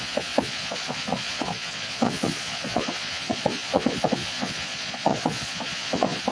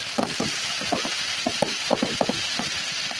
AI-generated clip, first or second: first